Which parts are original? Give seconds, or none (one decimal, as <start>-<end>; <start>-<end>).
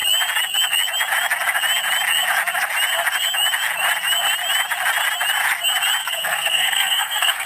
0.0-6.0